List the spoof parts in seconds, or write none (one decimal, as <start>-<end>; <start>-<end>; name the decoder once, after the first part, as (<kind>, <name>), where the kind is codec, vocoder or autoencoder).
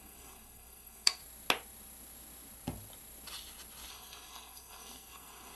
0.0-1.2 (codec, SNAC); 3.9-5.5